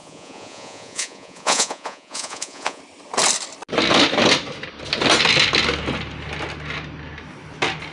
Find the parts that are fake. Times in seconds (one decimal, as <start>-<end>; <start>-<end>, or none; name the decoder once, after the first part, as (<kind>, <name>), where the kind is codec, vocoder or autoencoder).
0.0-2.8 (vocoder, Vocos)